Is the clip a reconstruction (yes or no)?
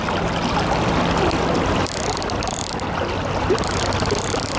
no